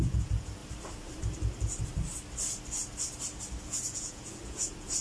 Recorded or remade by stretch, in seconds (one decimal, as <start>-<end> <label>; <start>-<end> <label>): 0.0-0.6 remade; 0.6-3.6 recorded; 3.6-5.0 remade